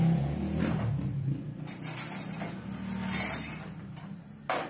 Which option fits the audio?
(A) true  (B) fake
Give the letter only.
A